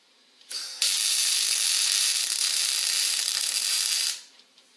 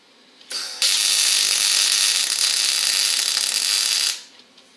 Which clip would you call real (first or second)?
second